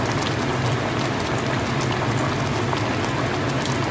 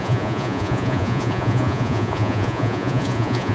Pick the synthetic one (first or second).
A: second